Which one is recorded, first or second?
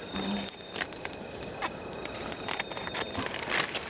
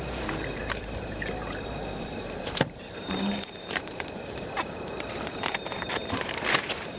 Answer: first